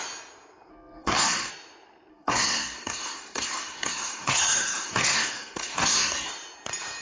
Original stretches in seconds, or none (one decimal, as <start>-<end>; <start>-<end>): 0.0-0.7; 1.5-2.1; 6.3-7.0